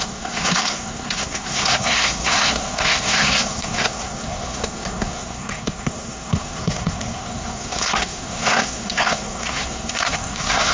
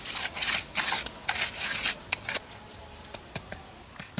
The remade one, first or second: first